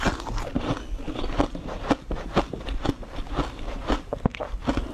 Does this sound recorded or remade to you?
recorded